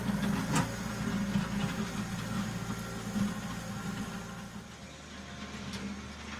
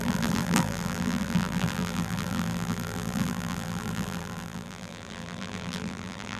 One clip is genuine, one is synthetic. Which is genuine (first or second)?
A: first